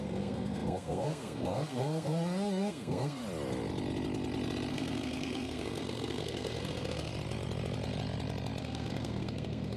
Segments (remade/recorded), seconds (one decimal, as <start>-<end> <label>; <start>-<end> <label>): 0.0-3.2 remade; 3.2-4.7 recorded; 4.7-7.1 remade; 7.1-8.6 recorded; 8.6-9.8 remade